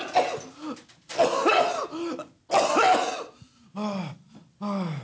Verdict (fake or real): real